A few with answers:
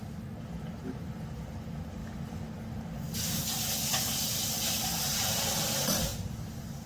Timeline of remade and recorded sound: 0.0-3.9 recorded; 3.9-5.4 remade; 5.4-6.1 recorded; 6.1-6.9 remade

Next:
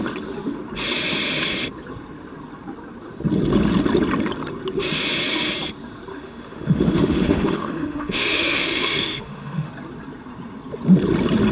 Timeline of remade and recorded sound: 0.0-6.1 recorded; 6.1-9.7 remade; 9.7-11.5 recorded

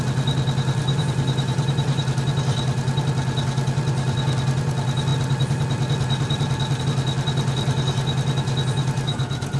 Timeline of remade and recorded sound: 0.0-0.8 recorded; 0.8-2.0 remade; 2.0-9.6 recorded

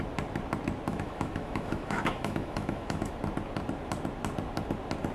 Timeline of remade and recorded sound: 0.0-0.9 recorded; 0.9-3.1 remade; 3.1-5.1 recorded